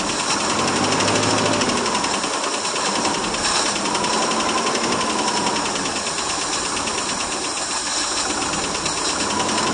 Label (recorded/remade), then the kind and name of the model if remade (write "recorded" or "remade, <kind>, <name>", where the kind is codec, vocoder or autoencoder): recorded